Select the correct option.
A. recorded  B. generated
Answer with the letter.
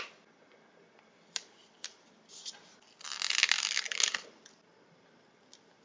A